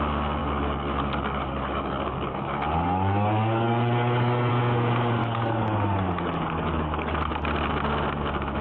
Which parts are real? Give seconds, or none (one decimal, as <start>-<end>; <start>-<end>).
0.0-0.4; 4.5-5.2; 7.3-8.6